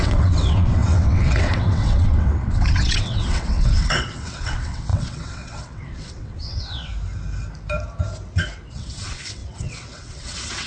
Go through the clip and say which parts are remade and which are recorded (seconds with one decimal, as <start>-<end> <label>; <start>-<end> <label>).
0.0-6.9 remade; 6.9-8.7 recorded; 8.7-10.7 remade

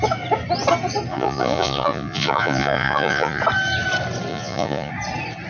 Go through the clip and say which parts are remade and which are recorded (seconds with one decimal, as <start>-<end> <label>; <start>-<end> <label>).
0.0-1.1 recorded; 1.1-3.4 remade; 3.4-4.3 recorded; 4.3-4.9 remade; 4.9-5.5 recorded

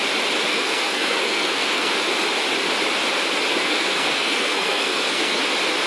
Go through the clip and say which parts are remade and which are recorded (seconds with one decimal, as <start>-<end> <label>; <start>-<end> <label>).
0.0-0.5 recorded; 0.5-1.9 remade; 1.9-3.5 recorded; 3.5-5.4 remade; 5.4-5.9 recorded

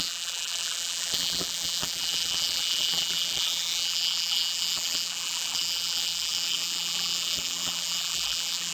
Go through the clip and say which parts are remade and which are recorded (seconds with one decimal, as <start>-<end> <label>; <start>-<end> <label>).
0.0-8.7 remade

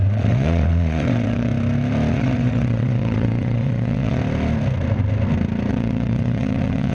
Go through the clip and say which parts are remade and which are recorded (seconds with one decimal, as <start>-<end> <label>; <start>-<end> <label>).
0.0-1.5 remade; 1.5-2.1 recorded; 2.1-4.2 remade; 4.2-5.7 recorded; 5.7-6.9 remade